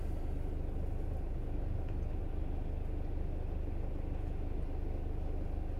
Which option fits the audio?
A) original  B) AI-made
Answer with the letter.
A